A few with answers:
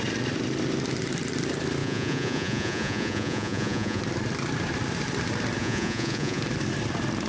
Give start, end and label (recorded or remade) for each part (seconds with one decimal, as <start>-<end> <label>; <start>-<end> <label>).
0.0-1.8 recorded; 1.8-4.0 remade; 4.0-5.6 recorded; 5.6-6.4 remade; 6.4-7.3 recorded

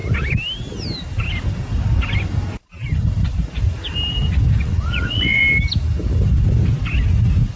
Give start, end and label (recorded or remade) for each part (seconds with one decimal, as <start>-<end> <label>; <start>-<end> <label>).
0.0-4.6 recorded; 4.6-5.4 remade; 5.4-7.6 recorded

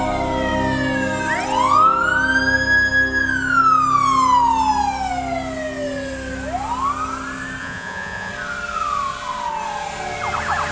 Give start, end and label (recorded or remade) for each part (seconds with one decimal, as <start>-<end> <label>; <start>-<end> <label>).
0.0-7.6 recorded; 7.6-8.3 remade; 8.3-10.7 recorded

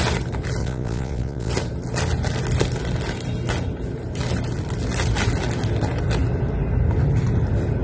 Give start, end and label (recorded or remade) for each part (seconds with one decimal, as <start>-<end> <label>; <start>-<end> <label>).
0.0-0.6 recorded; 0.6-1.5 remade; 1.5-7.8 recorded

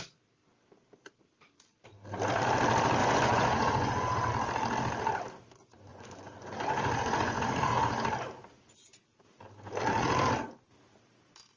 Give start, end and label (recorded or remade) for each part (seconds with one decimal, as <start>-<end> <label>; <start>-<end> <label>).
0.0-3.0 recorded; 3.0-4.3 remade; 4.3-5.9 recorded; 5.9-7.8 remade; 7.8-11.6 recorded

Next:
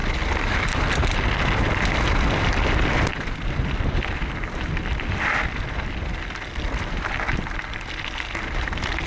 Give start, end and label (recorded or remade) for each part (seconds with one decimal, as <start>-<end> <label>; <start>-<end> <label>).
0.0-9.1 recorded